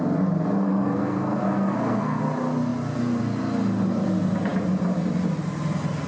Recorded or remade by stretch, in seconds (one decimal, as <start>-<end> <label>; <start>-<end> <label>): 0.0-0.6 recorded; 0.6-2.2 remade; 2.2-6.1 recorded